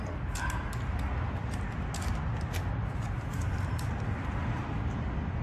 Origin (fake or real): real